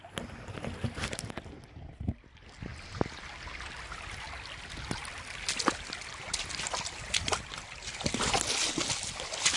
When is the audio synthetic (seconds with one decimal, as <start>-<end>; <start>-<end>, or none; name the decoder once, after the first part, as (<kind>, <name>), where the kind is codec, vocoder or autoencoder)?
none